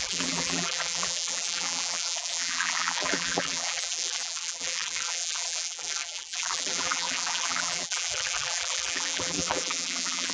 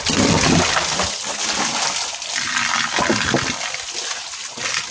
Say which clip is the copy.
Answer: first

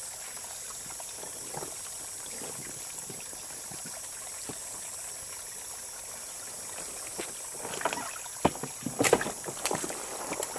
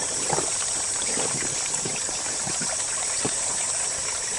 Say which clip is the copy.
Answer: second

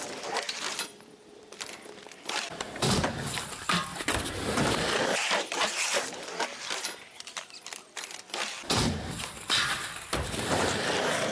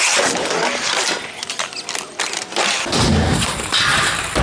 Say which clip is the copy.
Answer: first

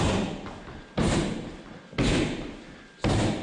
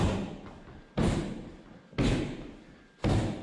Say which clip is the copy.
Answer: first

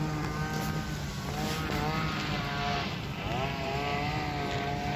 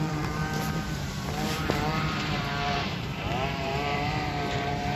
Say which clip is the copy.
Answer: second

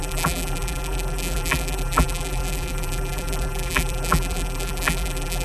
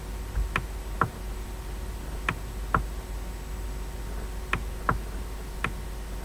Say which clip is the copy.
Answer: first